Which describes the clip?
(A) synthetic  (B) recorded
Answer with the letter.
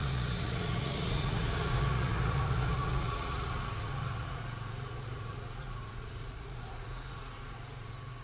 A